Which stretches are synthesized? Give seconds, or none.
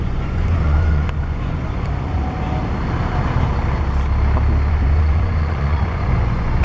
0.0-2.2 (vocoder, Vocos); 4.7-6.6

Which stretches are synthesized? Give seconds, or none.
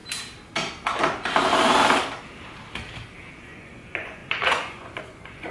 3.3-5.5 (vocoder, Vocos)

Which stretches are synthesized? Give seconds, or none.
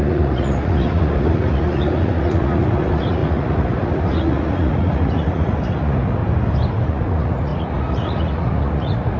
0.0-6.2 (vocoder, Vocos); 6.8-9.2